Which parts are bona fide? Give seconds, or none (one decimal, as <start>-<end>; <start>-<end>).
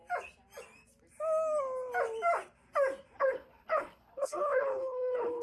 0.0-3.2